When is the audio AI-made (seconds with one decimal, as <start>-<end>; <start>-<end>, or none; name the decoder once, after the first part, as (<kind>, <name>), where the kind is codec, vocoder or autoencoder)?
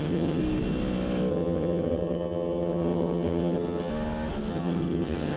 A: 0.0-0.4 (vocoder, HiFi-GAN); 1.3-3.9; 4.5-5.4